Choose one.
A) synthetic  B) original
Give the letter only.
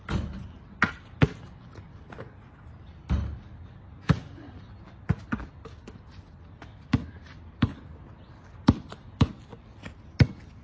B